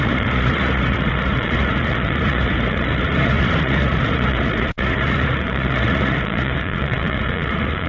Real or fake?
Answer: fake